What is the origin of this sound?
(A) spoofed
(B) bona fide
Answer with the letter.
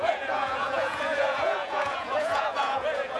A